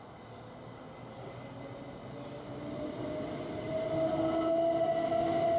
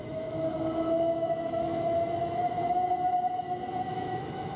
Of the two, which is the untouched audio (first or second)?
first